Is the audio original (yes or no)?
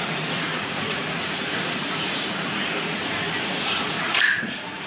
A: no